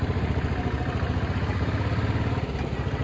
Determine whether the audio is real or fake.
real